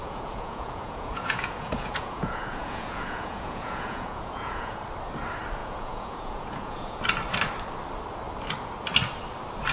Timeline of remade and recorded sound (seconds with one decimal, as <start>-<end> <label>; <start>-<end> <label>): 0.0-4.8 remade; 4.8-5.6 recorded; 5.6-7.0 remade; 7.0-9.7 recorded